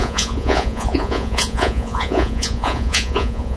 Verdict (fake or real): fake